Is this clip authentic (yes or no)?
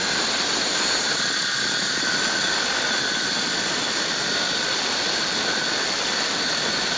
yes